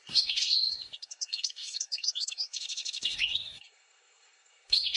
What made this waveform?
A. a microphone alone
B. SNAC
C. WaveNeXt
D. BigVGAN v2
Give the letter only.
B